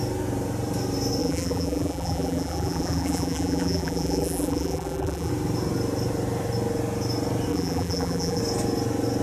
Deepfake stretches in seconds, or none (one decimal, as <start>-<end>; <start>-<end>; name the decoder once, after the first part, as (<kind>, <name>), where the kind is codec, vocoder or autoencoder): 1.2-5.3 (vocoder, BigVGAN v2); 7.5-8.4